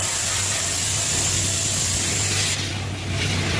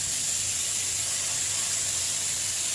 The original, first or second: first